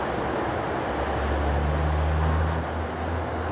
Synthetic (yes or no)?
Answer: no